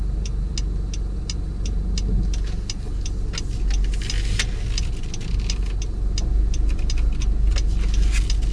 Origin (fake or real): real